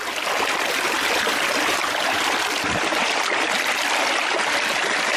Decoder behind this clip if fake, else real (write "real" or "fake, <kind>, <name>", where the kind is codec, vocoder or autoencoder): fake, vocoder, BigVGAN v2